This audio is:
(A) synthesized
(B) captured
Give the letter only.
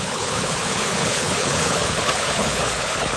A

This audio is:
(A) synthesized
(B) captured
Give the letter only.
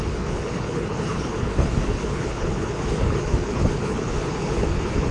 A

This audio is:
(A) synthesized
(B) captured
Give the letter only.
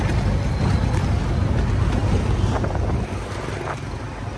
B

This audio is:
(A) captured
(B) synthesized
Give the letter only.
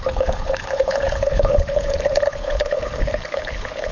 B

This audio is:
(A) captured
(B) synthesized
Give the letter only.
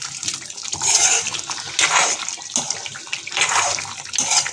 A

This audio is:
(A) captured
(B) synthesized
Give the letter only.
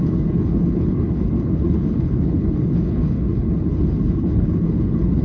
B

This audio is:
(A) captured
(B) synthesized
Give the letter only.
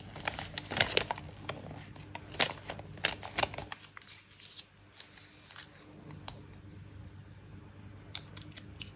A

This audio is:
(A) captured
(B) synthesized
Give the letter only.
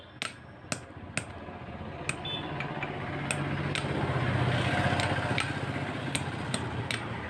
A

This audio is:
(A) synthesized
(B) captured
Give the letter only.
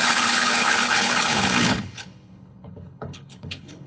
A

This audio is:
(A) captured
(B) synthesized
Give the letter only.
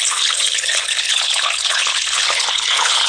B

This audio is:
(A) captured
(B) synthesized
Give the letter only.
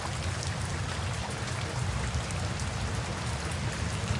A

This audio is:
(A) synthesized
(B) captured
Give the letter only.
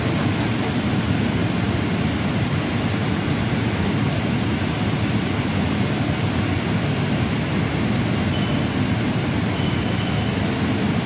B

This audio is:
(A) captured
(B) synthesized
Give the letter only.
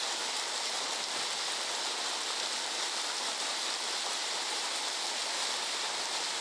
A